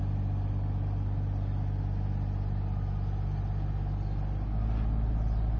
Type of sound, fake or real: real